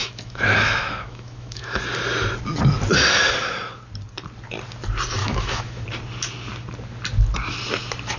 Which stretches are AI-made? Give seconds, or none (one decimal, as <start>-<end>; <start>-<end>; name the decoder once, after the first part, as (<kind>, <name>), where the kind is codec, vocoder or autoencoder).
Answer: 0.0-1.8 (autoencoder, DAC-VAE); 5.2-5.8